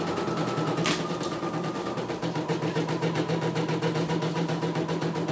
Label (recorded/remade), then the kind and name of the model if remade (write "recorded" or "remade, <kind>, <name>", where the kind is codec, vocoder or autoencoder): recorded